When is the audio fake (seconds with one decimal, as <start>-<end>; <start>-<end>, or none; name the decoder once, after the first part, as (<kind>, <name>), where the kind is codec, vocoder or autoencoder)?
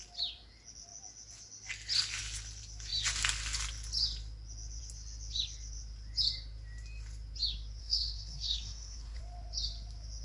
7.8-9.2 (codec, SNAC)